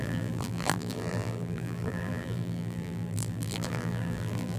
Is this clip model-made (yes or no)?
yes